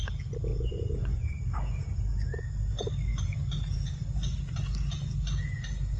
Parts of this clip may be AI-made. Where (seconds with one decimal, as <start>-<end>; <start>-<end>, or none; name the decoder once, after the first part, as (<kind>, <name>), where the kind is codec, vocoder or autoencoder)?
0.5-1.4 (vocoder, Vocos)